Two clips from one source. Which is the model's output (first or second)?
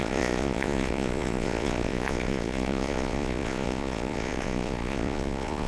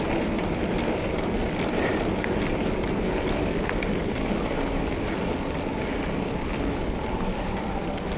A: first